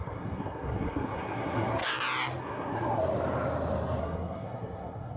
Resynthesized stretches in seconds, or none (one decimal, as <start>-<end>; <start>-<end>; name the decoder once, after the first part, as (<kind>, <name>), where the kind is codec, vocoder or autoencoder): 0.0-1.8 (codec, SNAC); 2.4-3.0; 4.0-5.2